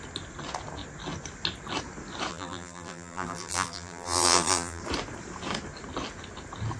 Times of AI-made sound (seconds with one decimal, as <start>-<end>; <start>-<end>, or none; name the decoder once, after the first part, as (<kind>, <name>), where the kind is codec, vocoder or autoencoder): 2.3-4.8 (vocoder, BigVGAN v2)